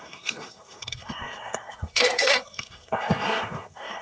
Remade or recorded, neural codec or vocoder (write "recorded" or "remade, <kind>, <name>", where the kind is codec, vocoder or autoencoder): remade, codec, SNAC